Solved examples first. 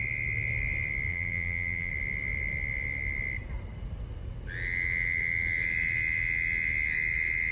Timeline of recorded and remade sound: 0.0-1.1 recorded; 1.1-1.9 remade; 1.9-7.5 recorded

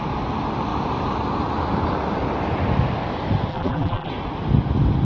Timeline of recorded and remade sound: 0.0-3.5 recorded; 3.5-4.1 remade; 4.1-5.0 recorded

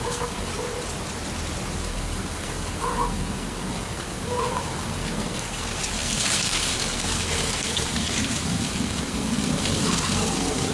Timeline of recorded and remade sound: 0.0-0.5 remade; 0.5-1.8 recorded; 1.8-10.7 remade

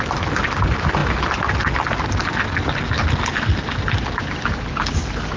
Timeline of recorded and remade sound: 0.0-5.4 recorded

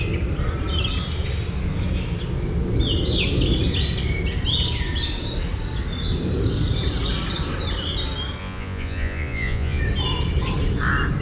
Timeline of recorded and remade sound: 0.0-8.4 recorded; 8.4-9.8 remade; 9.8-11.2 recorded